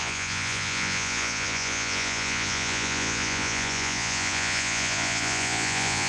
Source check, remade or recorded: remade